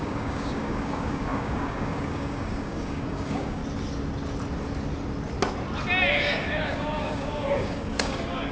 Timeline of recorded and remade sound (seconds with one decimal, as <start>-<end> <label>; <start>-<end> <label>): 0.0-3.6 remade; 3.6-6.1 recorded; 6.1-8.5 remade

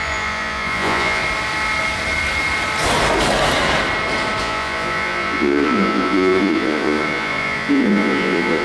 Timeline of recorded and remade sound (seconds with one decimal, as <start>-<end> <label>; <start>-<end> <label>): 0.0-1.2 remade; 1.2-4.4 recorded; 4.4-8.6 remade

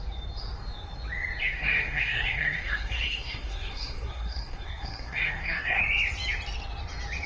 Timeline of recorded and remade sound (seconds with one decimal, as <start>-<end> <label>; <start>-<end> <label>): 0.0-1.4 recorded; 1.4-5.8 remade; 5.8-7.3 recorded